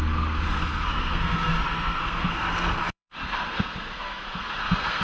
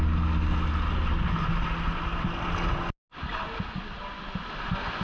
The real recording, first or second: second